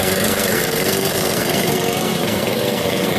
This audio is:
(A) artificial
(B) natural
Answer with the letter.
A